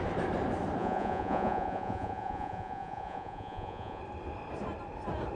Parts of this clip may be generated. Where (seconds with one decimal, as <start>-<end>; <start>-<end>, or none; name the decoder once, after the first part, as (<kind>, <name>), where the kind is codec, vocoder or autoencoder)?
0.8-4.0 (vocoder, Vocos)